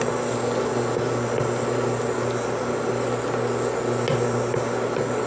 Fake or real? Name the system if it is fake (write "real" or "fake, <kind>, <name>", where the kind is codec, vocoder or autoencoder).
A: real